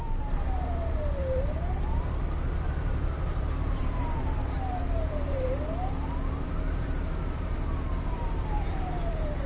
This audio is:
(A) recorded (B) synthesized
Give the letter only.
B